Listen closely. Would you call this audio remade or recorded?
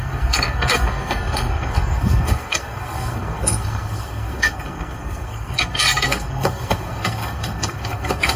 remade